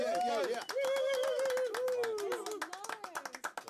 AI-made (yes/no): no